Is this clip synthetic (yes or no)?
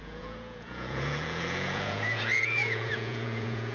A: yes